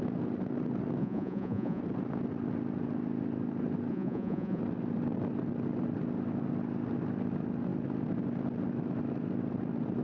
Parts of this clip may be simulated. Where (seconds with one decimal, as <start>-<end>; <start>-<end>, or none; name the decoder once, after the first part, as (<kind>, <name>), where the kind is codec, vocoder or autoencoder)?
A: 1.0-1.8 (vocoder, Vocos); 3.9-4.6